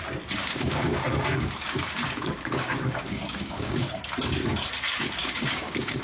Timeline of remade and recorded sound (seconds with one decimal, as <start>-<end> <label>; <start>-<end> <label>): 0.0-0.4 recorded; 0.4-4.0 remade; 4.0-5.2 recorded; 5.2-6.0 remade

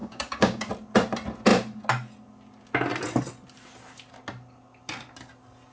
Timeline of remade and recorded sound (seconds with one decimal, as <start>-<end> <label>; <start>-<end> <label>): 0.0-0.7 remade; 0.7-5.7 recorded

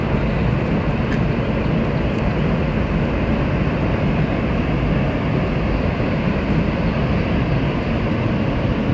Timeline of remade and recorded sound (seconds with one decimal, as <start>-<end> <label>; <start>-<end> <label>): 0.0-8.9 recorded

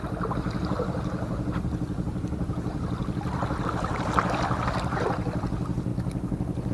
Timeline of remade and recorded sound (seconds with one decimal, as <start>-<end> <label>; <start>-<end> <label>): 0.0-6.7 recorded

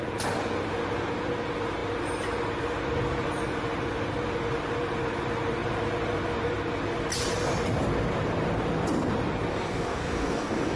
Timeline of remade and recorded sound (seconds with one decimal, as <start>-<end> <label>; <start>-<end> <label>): 0.0-9.5 recorded; 9.5-10.8 remade